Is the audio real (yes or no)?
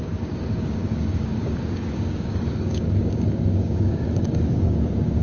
no